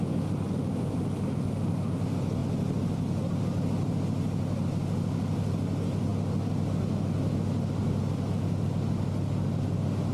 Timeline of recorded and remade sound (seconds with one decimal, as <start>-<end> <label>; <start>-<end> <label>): 0.0-10.1 recorded